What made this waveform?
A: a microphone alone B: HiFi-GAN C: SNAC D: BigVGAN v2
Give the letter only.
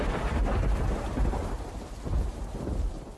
D